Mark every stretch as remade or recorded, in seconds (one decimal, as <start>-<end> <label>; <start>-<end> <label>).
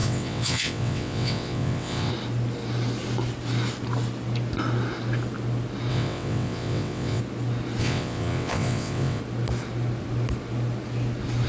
0.0-2.1 remade; 2.1-5.9 recorded; 5.9-7.2 remade; 7.2-7.8 recorded; 7.8-9.2 remade; 9.2-11.5 recorded